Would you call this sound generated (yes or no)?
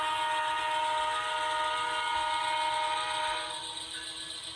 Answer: no